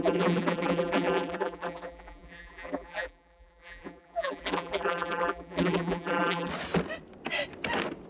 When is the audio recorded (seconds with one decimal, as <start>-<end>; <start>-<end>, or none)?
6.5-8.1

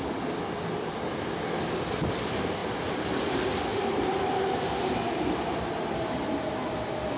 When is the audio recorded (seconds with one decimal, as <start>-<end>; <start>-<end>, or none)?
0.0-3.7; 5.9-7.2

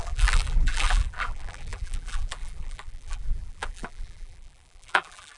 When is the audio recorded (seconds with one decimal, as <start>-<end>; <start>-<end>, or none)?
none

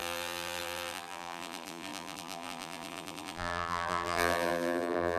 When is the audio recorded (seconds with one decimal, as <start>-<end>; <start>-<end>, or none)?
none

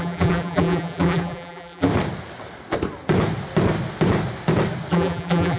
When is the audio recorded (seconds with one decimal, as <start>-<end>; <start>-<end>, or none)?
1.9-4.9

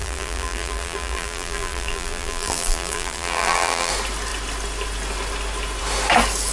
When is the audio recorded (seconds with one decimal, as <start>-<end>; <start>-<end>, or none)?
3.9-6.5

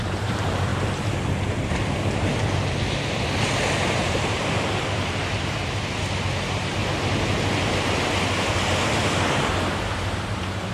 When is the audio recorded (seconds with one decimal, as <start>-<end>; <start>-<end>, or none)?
0.7-1.6; 2.3-3.6; 6.8-10.2

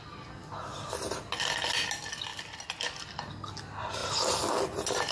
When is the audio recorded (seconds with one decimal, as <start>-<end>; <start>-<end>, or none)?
0.0-2.3; 3.3-4.0; 4.5-5.1